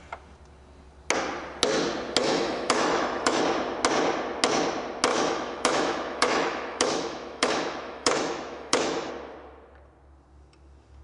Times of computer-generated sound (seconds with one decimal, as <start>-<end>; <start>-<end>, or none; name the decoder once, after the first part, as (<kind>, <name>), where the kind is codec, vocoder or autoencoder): 2.2-3.4 (autoencoder, DAC-VAE); 5.1-9.1